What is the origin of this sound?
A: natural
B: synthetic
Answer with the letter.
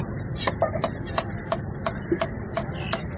B